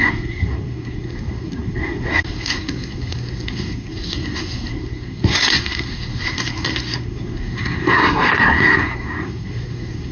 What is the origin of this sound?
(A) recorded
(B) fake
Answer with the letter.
B